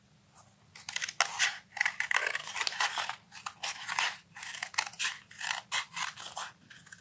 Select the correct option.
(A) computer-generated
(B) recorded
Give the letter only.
B